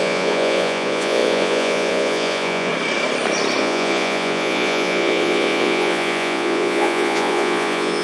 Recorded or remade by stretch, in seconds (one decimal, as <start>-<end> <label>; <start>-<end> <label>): 0.0-2.7 remade; 2.7-3.6 recorded; 3.6-8.0 remade

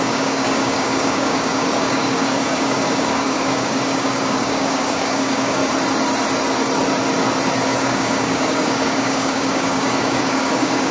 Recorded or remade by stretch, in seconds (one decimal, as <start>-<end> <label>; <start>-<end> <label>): 0.0-5.6 remade; 5.6-7.7 recorded; 7.7-10.9 remade

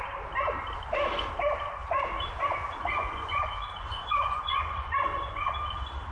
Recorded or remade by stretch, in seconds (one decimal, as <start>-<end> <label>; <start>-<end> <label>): 0.0-3.0 recorded; 3.0-5.5 remade; 5.5-6.1 recorded

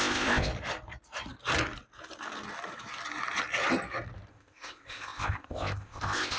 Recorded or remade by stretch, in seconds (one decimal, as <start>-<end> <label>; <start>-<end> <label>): 0.0-0.5 remade; 0.5-4.3 recorded; 4.3-6.4 remade

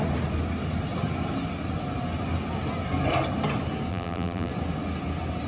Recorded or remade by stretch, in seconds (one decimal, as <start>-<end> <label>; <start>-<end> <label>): 0.0-3.9 recorded; 3.9-4.5 remade; 4.5-5.5 recorded